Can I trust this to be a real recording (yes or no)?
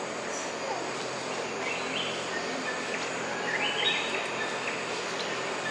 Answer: yes